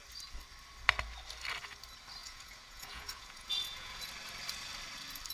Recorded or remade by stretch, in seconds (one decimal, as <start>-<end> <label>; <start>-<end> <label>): 0.0-2.2 recorded; 2.2-4.1 remade; 4.1-5.3 recorded